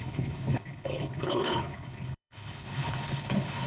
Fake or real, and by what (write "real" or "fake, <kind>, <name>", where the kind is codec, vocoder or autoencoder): fake, codec, HILCodec